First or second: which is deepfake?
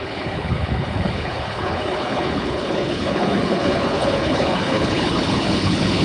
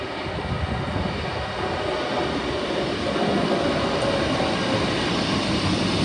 first